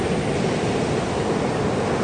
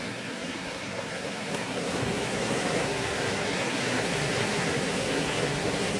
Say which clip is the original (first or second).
first